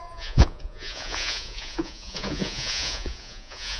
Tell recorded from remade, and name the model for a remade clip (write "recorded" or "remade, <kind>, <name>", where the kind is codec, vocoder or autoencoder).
remade, vocoder, Vocos